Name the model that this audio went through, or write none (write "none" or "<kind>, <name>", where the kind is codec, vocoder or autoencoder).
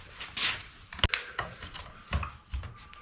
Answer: none